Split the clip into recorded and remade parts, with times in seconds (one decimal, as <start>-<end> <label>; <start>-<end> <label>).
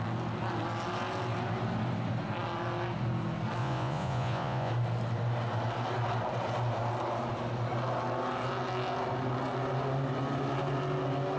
0.0-3.6 recorded; 3.6-4.7 remade; 4.7-11.4 recorded